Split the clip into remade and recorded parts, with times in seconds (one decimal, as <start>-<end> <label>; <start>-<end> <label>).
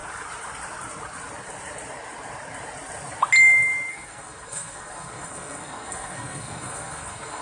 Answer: 0.0-3.9 recorded; 3.9-7.4 remade